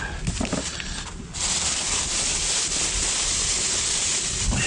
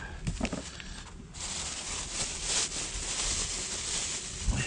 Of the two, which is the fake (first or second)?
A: first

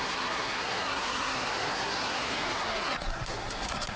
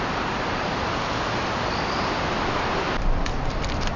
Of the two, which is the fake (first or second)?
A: first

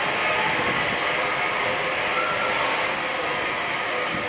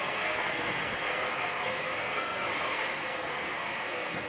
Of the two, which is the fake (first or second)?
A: second